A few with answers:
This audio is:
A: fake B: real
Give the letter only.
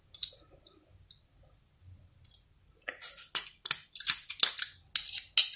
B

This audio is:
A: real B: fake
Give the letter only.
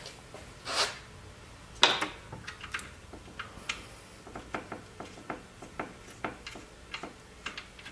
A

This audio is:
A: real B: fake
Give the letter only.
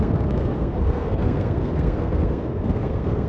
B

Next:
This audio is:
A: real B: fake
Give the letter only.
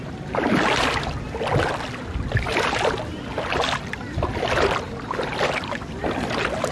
A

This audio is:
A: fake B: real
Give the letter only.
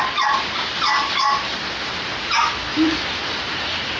B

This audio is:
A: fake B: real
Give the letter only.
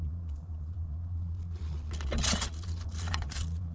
A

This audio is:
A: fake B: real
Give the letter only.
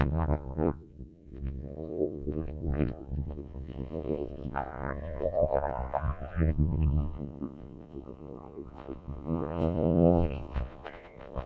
A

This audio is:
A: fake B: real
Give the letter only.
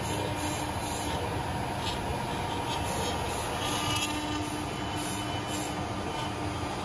B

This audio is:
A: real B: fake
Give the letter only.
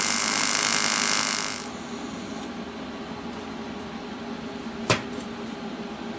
B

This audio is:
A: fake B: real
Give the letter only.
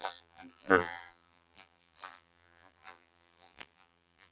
A